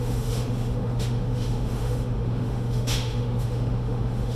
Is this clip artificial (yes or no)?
yes